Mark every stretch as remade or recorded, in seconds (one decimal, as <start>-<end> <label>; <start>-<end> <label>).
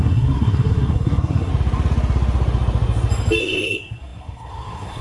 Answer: 0.0-1.5 remade; 1.5-3.4 recorded; 3.4-5.0 remade